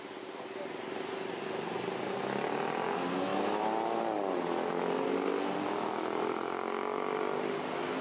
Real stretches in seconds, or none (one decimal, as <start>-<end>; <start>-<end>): 0.0-8.0